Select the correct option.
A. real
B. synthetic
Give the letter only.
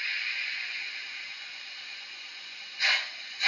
B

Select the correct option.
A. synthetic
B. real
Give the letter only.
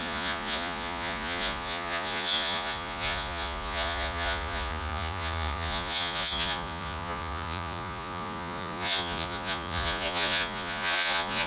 A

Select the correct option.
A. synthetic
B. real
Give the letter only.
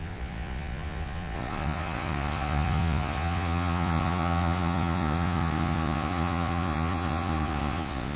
A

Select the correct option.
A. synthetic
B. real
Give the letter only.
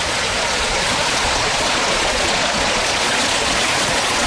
A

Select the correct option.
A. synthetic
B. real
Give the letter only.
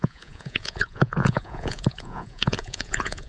A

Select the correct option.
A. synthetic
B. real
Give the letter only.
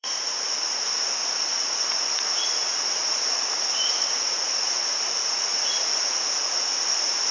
A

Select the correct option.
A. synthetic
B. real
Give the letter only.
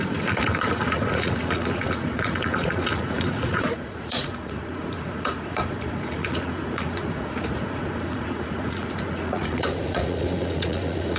A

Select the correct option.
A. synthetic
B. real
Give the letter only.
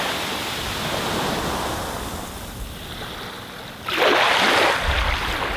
B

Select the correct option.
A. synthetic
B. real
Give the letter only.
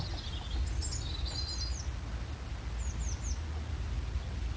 B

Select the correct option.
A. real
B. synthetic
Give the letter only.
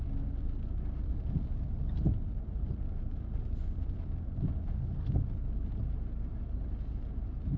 A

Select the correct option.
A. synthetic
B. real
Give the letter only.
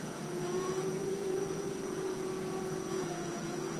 A